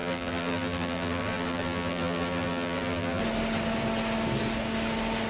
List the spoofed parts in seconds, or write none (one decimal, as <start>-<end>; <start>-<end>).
0.0-3.2

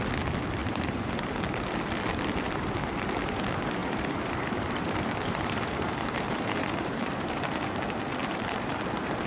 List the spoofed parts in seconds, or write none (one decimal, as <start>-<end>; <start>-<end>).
0.6-1.2; 3.8-7.6; 8.2-9.3

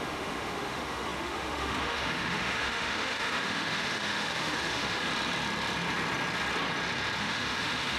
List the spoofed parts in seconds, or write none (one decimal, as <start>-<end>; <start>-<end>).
0.0-5.1; 7.2-8.0

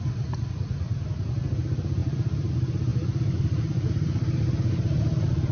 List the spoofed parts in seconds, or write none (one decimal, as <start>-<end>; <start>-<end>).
2.0-2.5

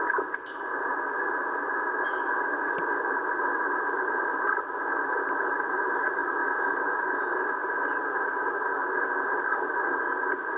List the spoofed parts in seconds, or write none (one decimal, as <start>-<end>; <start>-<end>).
none

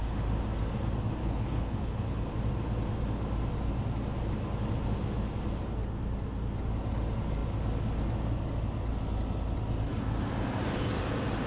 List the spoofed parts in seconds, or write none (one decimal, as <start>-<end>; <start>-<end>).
1.2-2.3

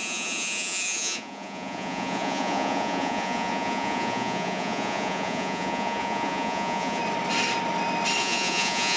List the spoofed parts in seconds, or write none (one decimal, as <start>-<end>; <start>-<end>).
0.0-7.0; 8.2-9.0